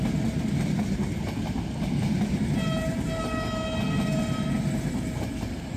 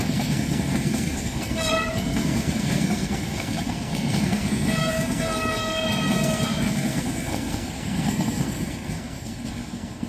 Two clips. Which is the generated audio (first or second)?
second